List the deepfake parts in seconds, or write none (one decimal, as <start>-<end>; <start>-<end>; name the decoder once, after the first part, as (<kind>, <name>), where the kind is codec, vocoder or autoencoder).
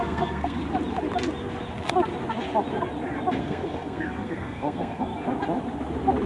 0.0-0.6 (codec, SNAC); 3.4-5.1